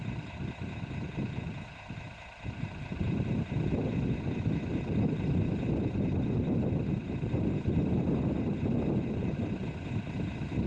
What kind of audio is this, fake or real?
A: real